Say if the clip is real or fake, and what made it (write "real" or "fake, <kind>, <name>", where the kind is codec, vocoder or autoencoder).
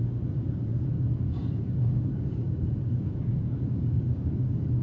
fake, codec, DAC